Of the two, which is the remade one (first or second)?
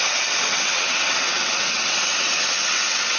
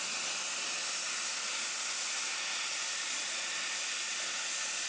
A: first